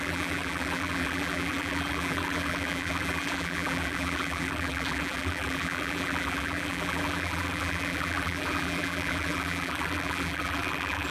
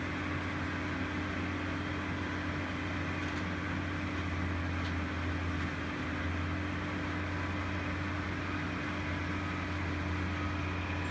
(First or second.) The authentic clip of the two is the second